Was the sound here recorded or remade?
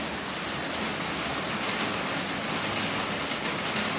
recorded